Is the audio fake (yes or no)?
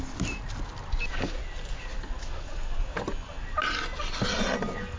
no